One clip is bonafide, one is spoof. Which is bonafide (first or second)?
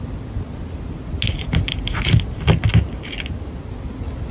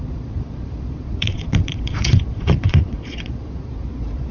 first